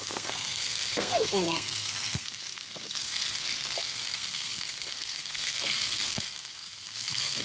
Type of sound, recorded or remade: remade